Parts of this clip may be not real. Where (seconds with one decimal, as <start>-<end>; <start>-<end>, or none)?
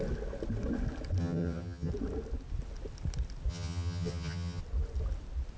1.2-1.9; 3.5-4.6